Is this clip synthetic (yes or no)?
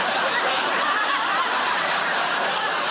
yes